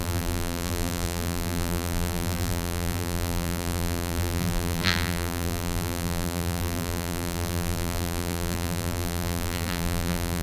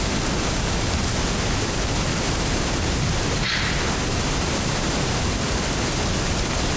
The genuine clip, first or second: second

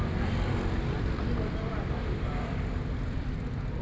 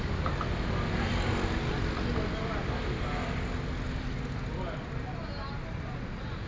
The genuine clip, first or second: second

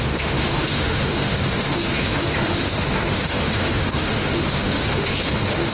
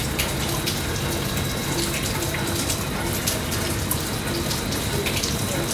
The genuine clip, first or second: second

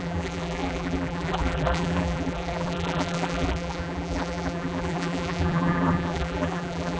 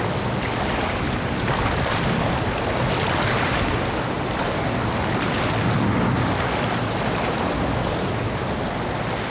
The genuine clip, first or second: second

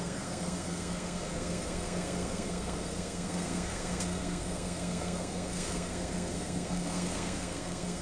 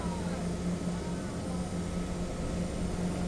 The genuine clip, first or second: second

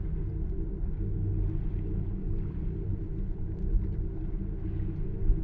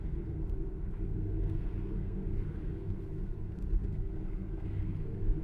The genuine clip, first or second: first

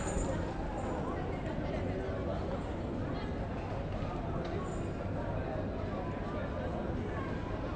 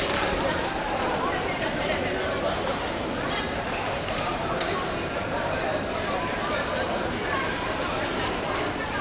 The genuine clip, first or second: first